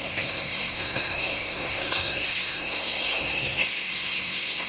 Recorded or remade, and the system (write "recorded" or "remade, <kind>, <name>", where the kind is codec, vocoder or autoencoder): remade, codec, SNAC